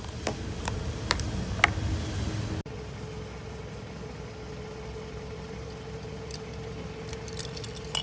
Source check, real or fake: real